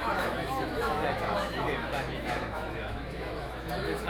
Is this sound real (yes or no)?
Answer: no